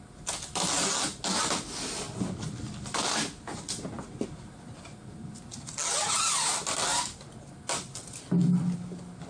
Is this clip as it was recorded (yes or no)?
yes